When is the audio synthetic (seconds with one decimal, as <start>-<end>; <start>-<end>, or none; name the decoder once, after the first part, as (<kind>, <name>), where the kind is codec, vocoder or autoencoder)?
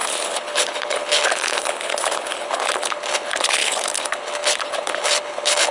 0.0-5.7 (codec, HILCodec)